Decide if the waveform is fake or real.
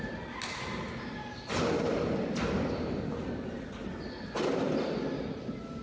real